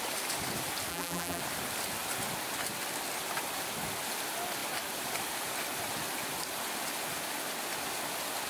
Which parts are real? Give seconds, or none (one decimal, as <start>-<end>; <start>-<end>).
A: 0.0-0.9; 1.4-8.5